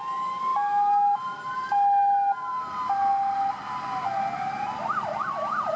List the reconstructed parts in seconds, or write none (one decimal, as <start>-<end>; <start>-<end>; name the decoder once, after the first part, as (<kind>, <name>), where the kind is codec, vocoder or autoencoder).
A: none